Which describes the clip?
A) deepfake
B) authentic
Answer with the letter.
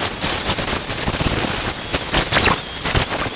B